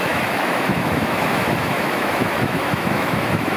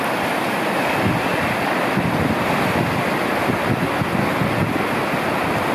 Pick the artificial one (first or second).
first